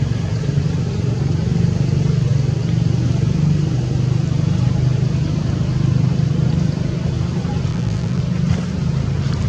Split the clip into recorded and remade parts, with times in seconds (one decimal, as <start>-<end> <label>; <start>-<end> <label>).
0.0-7.7 recorded; 7.7-8.2 remade; 8.2-9.5 recorded

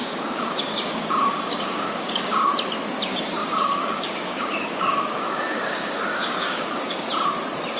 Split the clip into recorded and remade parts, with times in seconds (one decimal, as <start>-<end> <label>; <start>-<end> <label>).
0.0-2.5 remade; 2.5-3.4 recorded; 3.4-6.9 remade; 6.9-7.8 recorded

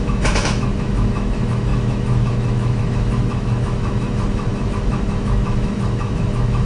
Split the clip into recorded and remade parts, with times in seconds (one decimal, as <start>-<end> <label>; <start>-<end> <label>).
0.0-6.6 remade

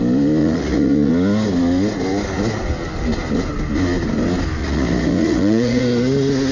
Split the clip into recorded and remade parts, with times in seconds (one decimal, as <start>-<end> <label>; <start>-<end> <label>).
0.0-0.4 recorded; 0.4-1.1 remade; 1.1-4.6 recorded; 4.6-5.8 remade; 5.8-6.5 recorded

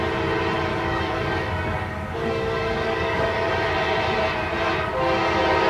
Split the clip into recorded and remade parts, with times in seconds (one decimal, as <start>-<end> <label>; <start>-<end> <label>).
0.0-0.7 recorded; 0.7-3.5 remade; 3.5-5.7 recorded